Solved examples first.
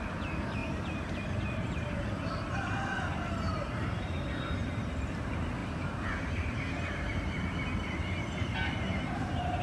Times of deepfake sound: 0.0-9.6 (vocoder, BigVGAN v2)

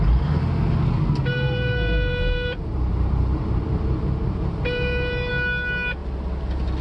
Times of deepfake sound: 1.2-5.3 (vocoder, BigVGAN v2)

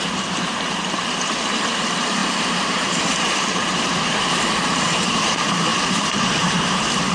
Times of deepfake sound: 0.0-7.1 (vocoder, BigVGAN v2)

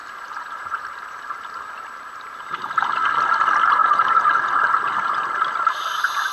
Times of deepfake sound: 0.0-2.9 (vocoder, BigVGAN v2); 3.8-4.6